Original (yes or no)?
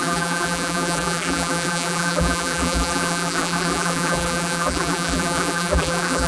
no